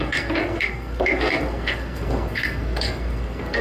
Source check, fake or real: fake